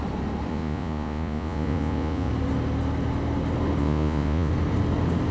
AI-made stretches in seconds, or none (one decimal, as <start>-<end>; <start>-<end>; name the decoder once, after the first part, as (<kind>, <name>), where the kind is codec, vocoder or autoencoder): 0.5-2.3 (vocoder, Vocos); 3.8-4.5